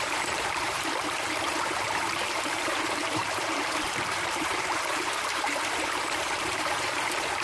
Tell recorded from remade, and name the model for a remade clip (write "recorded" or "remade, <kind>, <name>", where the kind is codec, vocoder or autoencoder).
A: remade, vocoder, BigVGAN v2